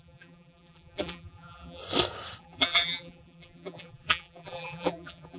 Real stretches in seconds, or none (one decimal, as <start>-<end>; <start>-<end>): 1.8-2.4